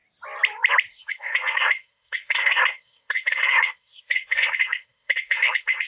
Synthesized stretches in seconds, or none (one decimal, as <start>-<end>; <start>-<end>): 0.9-5.9